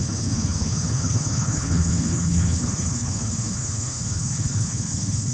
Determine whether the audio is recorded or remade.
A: remade